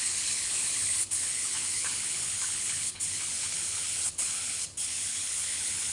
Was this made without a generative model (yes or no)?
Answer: no